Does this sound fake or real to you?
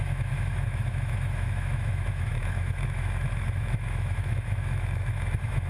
fake